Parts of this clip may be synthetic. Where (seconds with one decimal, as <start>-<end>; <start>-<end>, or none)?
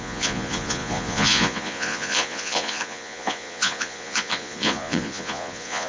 0.0-5.9